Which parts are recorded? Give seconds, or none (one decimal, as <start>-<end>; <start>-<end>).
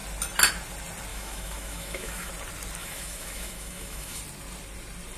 0.0-1.1; 2.3-2.8; 4.2-5.2